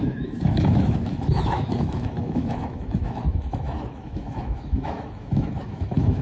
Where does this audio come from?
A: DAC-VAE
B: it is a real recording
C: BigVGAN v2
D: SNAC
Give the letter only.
A